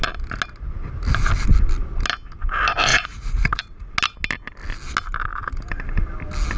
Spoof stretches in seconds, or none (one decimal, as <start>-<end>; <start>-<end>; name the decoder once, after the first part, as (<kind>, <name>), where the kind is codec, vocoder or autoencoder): 2.9-3.9 (vocoder, Vocos)